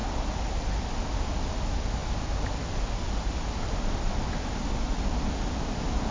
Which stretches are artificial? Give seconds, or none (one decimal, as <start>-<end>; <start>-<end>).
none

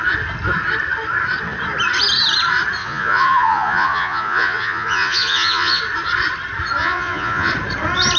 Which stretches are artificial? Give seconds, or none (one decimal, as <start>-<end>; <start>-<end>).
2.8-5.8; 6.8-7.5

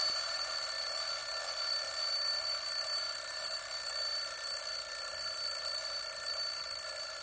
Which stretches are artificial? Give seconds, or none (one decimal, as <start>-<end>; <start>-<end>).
0.0-0.5